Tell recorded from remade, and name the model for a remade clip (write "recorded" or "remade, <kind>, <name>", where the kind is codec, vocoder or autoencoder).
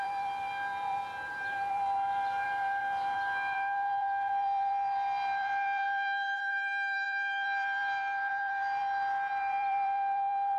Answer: remade, vocoder, BigVGAN v2